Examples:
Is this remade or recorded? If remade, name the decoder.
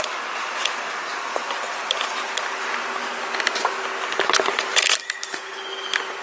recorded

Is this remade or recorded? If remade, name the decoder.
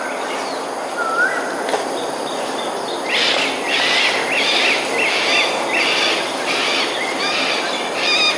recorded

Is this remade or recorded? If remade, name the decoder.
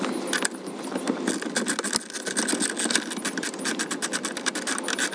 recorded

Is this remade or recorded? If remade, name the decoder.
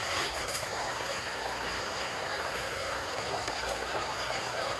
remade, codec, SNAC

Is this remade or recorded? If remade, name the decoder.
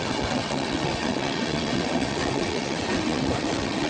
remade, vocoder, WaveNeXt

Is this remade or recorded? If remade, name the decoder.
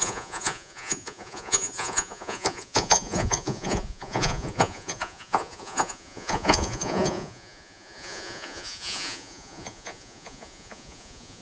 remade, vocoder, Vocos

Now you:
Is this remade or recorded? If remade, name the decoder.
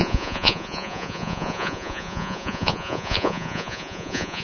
remade, vocoder, Vocos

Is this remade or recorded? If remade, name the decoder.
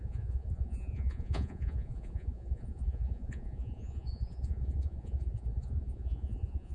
remade, vocoder, Vocos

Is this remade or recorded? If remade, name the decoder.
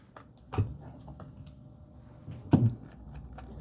recorded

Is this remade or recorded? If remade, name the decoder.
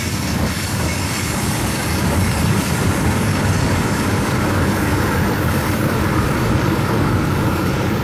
remade, codec, DAC